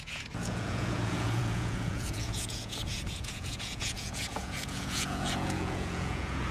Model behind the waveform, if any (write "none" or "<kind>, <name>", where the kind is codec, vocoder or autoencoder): vocoder, Vocos